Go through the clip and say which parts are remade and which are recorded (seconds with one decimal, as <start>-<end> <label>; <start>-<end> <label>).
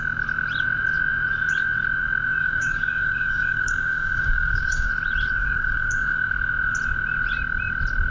0.0-2.4 recorded; 2.4-4.9 remade; 4.9-5.4 recorded; 5.4-6.3 remade; 6.3-8.1 recorded